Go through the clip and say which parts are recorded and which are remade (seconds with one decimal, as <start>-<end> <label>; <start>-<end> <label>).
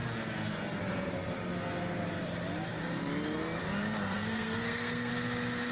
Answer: 0.0-4.1 recorded; 4.1-5.1 remade; 5.1-5.7 recorded